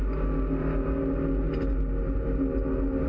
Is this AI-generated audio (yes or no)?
no